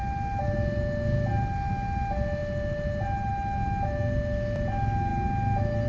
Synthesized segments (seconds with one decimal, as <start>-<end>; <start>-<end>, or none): none